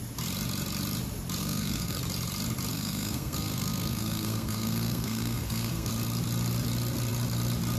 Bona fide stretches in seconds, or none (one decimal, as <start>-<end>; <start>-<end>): 0.0-1.4; 2.0-2.7; 5.9-7.8